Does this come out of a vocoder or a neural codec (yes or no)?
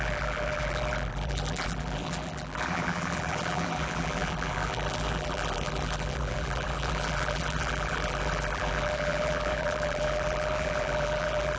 yes